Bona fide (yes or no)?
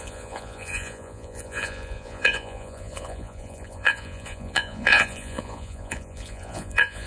no